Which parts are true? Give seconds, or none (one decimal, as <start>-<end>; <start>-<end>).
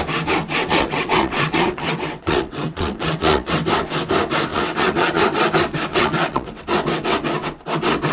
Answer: 0.0-0.6; 3.5-4.5; 5.2-5.9; 6.6-8.1